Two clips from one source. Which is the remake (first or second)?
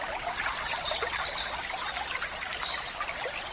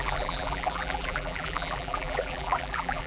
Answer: second